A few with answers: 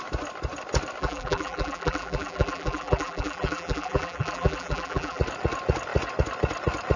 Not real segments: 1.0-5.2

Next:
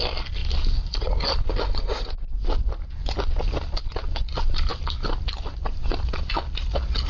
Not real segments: 5.6-6.3

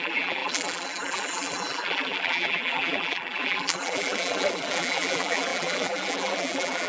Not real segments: 0.0-6.9

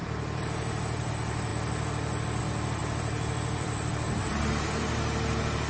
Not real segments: 0.0-1.1; 2.8-4.3

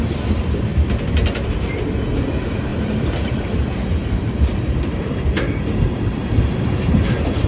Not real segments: 2.7-3.5; 4.0-7.1